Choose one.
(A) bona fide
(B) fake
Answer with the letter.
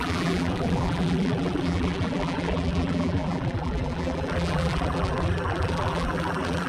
B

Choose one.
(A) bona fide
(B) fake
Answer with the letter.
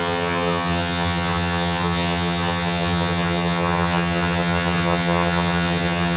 B